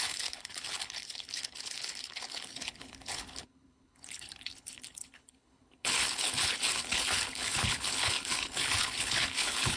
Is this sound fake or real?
fake